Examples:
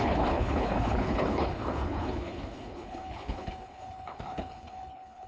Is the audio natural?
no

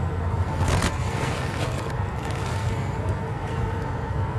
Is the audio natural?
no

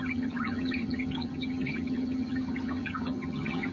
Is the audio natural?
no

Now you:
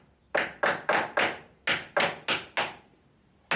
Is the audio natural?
yes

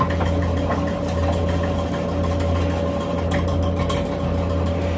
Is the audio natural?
yes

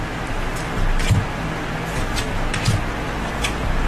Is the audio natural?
yes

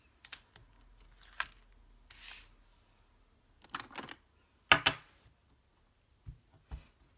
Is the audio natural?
yes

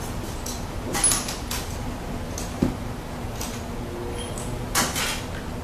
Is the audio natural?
yes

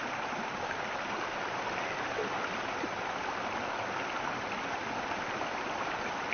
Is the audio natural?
yes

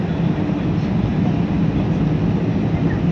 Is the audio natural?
yes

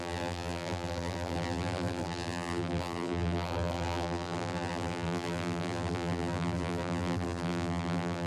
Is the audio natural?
no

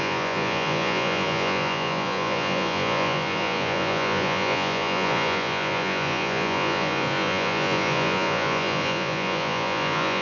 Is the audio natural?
no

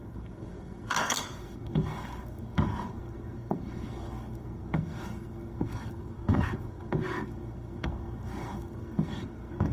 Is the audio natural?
no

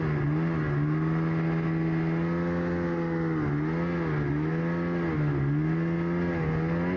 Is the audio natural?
yes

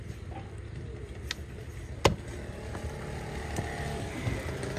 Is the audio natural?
yes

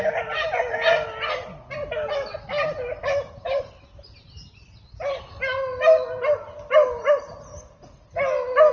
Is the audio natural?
yes